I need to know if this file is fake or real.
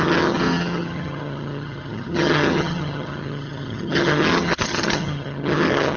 fake